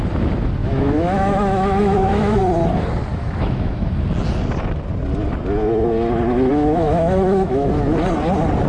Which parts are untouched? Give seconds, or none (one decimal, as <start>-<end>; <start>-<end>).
0.0-0.6; 2.4-3.1; 3.9-6.5; 7.7-8.7